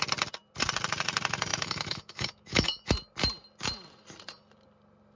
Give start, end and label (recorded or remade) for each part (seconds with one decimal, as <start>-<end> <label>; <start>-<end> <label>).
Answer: 0.0-1.5 recorded; 1.5-2.9 remade; 2.9-5.2 recorded